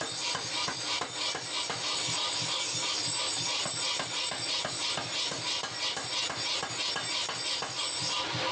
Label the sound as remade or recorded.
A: recorded